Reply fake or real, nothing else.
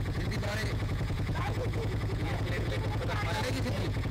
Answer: fake